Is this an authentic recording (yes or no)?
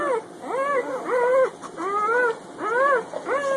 yes